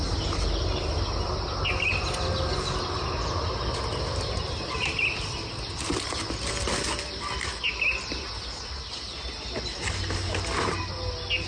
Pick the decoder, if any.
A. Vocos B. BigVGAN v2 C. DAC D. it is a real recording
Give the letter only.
D